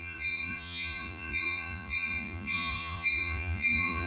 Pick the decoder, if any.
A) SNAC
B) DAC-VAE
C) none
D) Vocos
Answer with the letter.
D